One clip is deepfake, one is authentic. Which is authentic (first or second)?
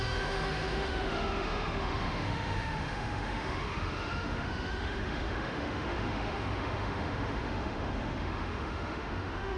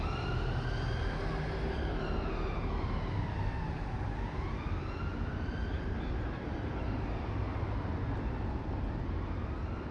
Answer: second